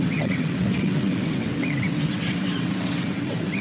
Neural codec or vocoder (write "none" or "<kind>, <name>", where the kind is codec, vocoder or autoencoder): vocoder, WaveNeXt